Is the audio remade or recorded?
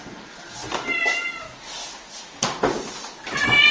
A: recorded